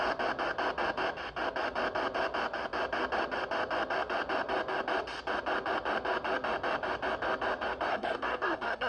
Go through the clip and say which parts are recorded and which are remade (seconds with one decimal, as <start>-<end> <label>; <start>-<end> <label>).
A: 0.0-7.9 recorded; 7.9-8.9 remade

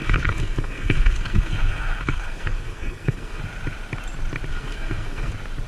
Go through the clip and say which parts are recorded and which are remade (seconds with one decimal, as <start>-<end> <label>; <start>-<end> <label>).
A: 0.0-3.4 remade; 3.4-4.5 recorded; 4.5-5.3 remade; 5.3-5.7 recorded

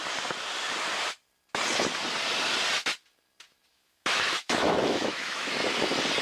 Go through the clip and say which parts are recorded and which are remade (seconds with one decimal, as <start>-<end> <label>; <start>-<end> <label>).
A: 0.0-3.7 recorded; 3.7-5.5 remade; 5.5-6.2 recorded

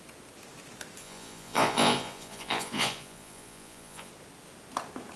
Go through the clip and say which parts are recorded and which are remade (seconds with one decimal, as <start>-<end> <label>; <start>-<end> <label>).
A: 0.0-1.0 recorded; 1.0-4.1 remade; 4.1-5.2 recorded

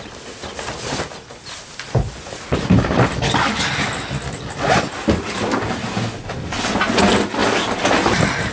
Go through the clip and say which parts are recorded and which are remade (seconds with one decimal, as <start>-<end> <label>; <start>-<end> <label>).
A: 0.0-8.5 recorded

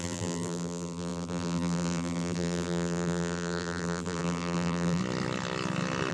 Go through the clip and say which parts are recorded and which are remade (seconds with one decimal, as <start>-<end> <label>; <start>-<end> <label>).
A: 0.0-5.0 remade; 5.0-6.1 recorded

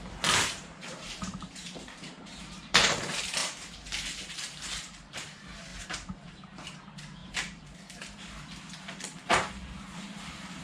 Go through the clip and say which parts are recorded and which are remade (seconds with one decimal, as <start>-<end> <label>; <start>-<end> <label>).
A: 0.0-10.6 remade

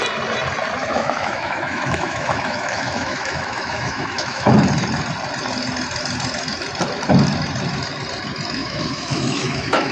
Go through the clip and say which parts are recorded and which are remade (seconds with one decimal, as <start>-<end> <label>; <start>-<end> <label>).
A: 0.0-0.8 recorded; 0.8-4.5 remade; 4.5-8.6 recorded; 8.6-9.9 remade